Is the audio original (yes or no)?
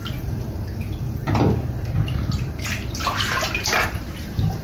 no